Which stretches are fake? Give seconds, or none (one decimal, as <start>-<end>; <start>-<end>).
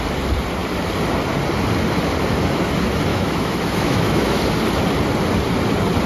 3.1-4.4